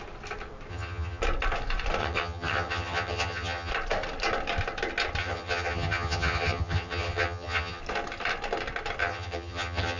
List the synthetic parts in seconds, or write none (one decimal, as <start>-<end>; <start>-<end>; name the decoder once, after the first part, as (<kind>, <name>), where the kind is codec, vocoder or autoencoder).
0.7-1.2 (vocoder, HiFi-GAN); 2.0-3.7; 5.2-7.8; 9.0-10.0